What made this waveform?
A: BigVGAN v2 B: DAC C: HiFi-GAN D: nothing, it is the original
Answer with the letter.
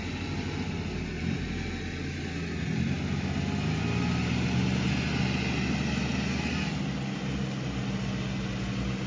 D